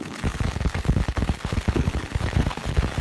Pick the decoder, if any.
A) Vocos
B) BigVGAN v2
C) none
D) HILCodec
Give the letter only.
D